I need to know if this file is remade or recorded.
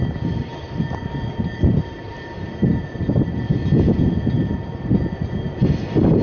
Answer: recorded